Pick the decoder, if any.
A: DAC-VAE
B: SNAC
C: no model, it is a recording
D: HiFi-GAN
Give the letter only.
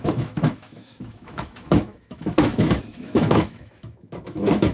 A